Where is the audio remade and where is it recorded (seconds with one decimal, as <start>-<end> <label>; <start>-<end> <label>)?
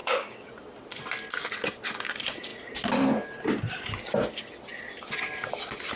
0.0-0.5 remade; 0.5-6.0 recorded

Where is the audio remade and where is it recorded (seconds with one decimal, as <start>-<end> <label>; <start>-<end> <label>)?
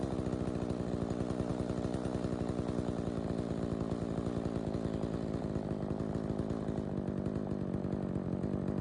0.0-8.8 recorded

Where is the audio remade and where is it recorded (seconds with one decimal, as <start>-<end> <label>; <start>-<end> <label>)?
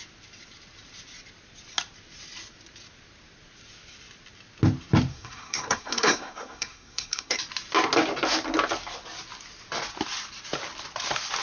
0.0-5.1 recorded; 5.1-7.4 remade; 7.4-11.4 recorded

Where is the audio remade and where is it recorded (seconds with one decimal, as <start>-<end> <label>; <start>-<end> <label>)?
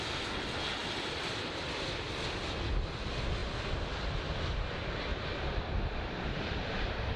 0.0-0.8 recorded; 0.8-2.4 remade; 2.4-3.4 recorded; 3.4-4.5 remade; 4.5-5.1 recorded; 5.1-7.2 remade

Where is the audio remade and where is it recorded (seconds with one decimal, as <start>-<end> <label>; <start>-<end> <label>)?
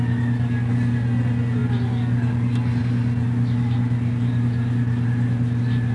0.0-5.9 recorded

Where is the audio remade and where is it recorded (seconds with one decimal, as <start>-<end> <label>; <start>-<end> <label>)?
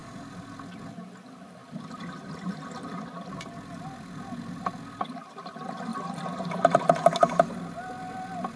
0.0-1.6 recorded; 1.6-4.6 remade; 4.6-5.9 recorded; 5.9-6.8 remade; 6.8-8.6 recorded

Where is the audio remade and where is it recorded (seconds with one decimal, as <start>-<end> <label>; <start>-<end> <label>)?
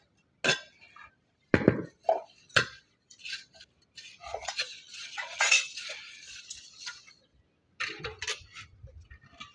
0.0-2.2 recorded; 2.2-3.3 remade; 3.3-4.2 recorded; 4.2-7.4 remade; 7.4-9.5 recorded